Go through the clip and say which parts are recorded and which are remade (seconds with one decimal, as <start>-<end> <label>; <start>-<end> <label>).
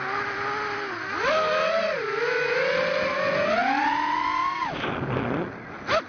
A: 0.0-3.6 recorded; 3.6-4.9 remade; 4.9-6.1 recorded